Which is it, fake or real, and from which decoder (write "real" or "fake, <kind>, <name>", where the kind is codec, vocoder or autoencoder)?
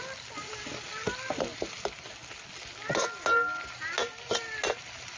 real